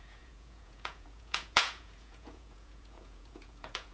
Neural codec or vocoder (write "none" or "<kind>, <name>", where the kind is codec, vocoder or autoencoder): vocoder, Vocos